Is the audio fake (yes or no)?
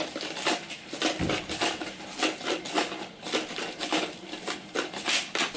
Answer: no